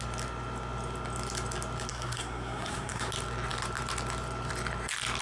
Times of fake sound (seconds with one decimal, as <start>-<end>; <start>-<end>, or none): 1.9-3.1

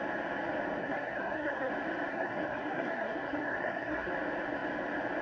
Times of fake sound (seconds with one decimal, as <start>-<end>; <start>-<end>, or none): 0.8-1.7; 2.1-4.1

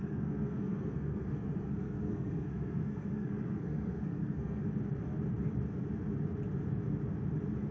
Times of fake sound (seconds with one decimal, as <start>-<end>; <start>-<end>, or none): 0.0-4.6

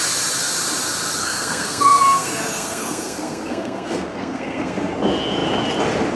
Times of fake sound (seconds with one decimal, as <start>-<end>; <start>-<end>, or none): 1.2-4.9

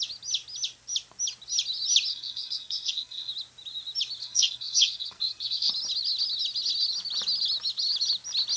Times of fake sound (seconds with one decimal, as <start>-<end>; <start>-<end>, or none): 2.1-3.3; 4.2-5.7

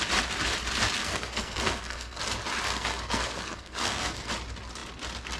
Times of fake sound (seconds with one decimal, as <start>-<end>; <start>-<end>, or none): 1.0-2.2; 2.7-4.3